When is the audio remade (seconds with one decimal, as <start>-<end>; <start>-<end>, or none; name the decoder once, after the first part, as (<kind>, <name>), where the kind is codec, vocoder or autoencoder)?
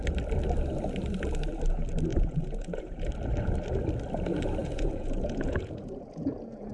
2.1-3.1 (vocoder, Vocos); 4.6-6.7